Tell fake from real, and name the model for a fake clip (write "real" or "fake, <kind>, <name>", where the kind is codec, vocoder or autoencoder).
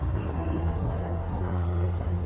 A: fake, codec, SNAC